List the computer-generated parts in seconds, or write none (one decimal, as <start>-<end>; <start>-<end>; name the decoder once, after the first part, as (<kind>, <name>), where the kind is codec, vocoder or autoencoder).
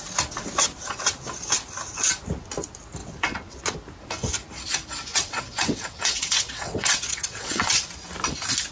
3.0-3.6 (vocoder, WaveNeXt); 5.1-7.8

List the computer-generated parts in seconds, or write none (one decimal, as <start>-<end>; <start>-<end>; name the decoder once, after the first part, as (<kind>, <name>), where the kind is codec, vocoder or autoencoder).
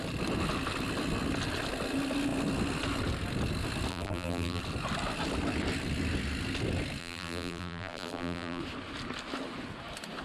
3.9-4.6 (vocoder, BigVGAN v2); 7.0-8.6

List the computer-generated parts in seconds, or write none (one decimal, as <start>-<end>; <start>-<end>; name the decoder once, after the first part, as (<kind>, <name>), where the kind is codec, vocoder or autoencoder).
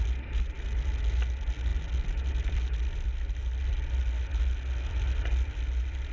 none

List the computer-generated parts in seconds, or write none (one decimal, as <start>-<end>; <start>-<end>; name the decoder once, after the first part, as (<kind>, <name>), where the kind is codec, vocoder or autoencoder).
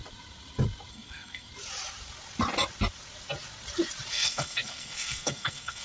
0.9-1.5 (codec, SNAC); 4.1-5.8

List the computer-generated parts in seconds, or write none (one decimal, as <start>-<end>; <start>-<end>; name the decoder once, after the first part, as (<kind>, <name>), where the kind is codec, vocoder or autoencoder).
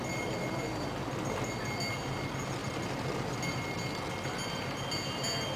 none